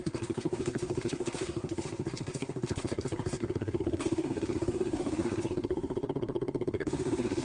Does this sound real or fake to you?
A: fake